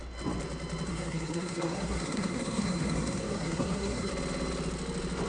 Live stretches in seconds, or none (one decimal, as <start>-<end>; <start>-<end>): 0.0-0.9; 4.1-5.3